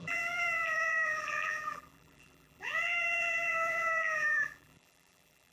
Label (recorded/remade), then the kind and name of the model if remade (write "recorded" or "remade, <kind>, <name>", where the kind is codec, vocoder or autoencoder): remade, vocoder, BigVGAN v2